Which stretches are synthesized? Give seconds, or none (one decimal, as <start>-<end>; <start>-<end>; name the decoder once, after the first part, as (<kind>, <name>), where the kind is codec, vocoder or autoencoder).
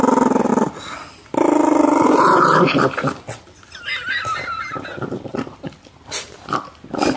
none